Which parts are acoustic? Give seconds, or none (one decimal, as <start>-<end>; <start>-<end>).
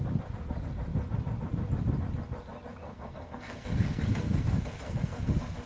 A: 0.0-2.8; 5.3-5.7